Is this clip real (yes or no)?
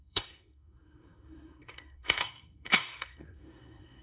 no